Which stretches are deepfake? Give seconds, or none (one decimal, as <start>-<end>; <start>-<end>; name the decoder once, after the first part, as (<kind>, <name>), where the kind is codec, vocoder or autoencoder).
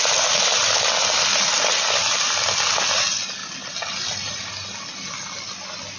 none